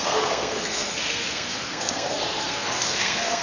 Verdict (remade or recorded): remade